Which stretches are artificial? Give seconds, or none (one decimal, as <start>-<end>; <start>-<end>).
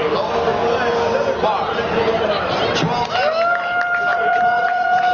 4.1-5.1